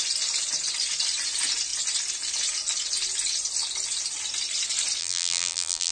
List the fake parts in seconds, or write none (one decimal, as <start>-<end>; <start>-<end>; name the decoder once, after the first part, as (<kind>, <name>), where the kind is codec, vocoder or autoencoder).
5.0-5.9 (vocoder, BigVGAN v2)